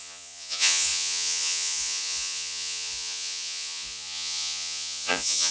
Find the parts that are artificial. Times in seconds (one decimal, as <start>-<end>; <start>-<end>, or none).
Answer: 0.0-5.5